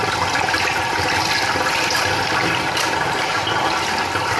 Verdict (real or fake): real